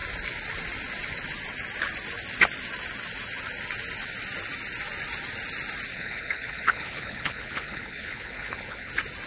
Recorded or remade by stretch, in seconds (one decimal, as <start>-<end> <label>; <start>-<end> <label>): 0.0-5.9 recorded; 5.9-8.9 remade; 8.9-9.3 recorded